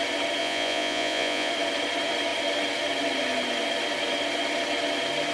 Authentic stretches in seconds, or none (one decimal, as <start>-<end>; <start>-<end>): 0.0-0.4; 1.5-5.3